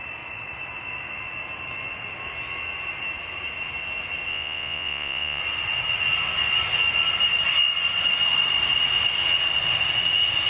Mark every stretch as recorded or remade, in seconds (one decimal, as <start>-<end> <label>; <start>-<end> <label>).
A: 0.0-4.3 recorded; 4.3-5.4 remade; 5.4-10.5 recorded